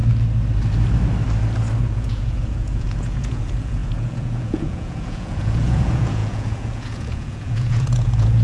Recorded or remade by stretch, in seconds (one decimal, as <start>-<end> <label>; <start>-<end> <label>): 0.0-1.8 recorded; 1.8-8.4 remade